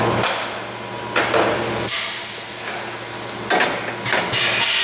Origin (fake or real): real